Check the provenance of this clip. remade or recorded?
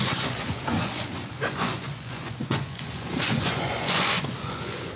remade